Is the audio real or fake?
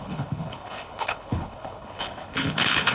fake